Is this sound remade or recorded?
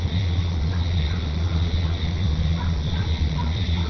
remade